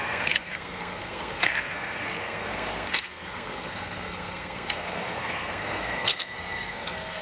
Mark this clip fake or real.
fake